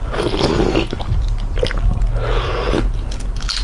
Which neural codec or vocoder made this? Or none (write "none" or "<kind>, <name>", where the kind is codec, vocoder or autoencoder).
none